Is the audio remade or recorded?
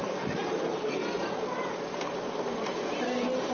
remade